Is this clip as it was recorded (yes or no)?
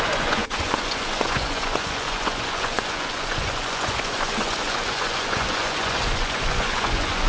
no